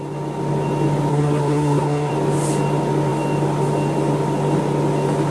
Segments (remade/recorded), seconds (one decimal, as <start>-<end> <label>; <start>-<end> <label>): 0.0-1.1 recorded; 1.1-2.1 remade; 2.1-5.3 recorded

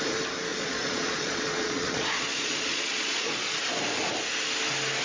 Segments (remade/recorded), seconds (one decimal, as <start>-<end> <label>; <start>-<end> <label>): 0.0-0.5 recorded; 0.5-3.5 remade; 3.5-5.0 recorded

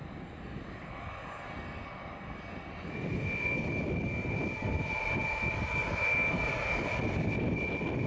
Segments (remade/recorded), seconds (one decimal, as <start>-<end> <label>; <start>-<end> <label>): 0.0-8.1 recorded